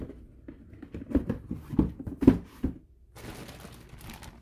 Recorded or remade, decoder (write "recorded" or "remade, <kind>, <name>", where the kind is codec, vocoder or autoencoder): recorded